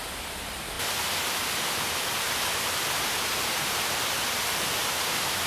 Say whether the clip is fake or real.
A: real